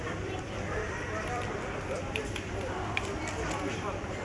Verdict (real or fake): fake